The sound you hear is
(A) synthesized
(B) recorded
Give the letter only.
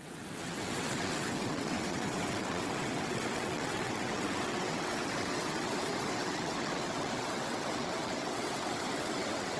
A